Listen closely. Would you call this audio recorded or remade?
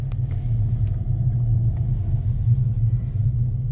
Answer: recorded